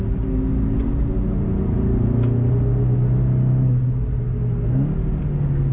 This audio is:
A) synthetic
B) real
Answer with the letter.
B